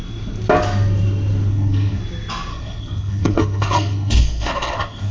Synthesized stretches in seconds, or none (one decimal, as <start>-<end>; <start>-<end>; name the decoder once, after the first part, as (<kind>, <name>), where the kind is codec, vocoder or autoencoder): 1.5-2.0 (codec, SNAC); 2.5-5.1